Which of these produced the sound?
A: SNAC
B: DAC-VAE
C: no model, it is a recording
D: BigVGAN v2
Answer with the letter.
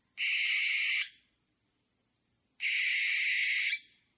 C